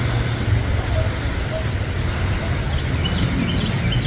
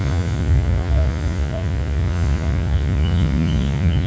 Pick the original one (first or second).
first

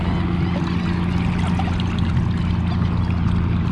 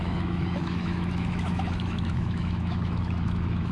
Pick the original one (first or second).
first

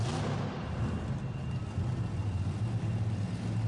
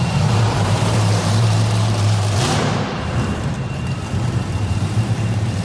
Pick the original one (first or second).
first